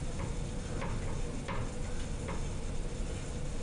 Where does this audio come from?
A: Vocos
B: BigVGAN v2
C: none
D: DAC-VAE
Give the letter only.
C